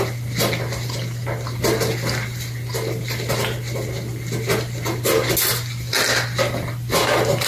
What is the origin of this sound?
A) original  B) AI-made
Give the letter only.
A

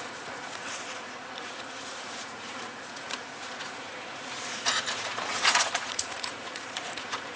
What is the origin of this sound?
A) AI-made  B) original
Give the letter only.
A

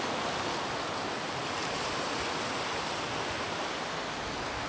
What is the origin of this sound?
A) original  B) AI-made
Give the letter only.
A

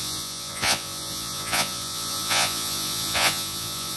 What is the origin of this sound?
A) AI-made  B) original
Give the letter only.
A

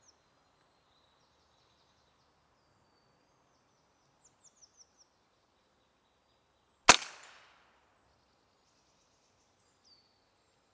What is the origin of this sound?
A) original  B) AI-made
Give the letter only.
A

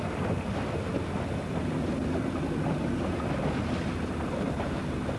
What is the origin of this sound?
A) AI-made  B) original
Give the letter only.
B